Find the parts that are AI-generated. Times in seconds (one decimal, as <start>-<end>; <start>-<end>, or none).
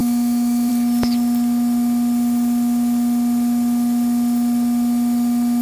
0.0-0.7